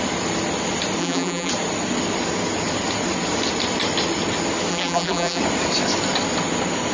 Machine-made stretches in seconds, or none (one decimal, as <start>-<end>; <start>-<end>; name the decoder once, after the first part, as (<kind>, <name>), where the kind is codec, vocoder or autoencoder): 1.0-1.5 (vocoder, BigVGAN v2); 4.7-5.4